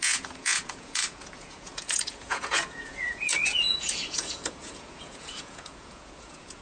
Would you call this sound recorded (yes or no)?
no